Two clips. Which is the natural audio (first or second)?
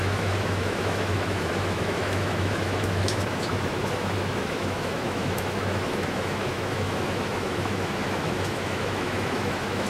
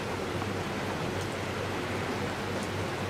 second